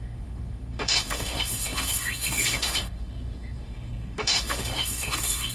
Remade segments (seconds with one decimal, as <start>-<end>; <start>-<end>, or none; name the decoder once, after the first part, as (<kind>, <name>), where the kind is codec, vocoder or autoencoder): 0.0-5.5 (autoencoder, DAC-VAE)

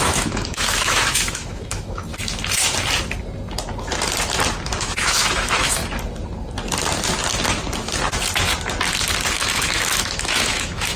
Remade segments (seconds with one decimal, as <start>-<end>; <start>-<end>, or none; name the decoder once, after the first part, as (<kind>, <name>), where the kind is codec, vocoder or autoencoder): 0.0-2.1 (autoencoder, DAC-VAE); 4.8-5.8; 9.3-11.0